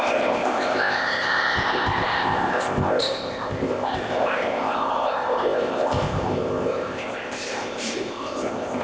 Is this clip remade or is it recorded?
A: remade